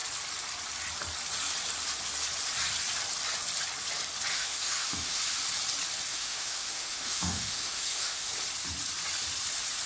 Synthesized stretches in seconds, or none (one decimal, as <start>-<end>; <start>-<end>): 4.3-5.2; 6.1-8.3